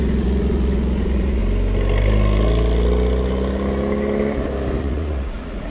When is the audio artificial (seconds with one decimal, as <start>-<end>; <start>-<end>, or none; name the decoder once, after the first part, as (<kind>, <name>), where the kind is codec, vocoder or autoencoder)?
0.0-1.4 (vocoder, Vocos); 4.8-5.7